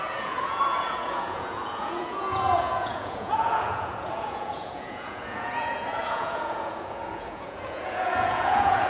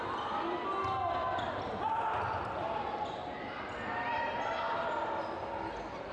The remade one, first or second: first